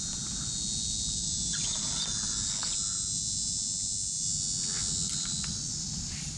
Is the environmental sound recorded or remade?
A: recorded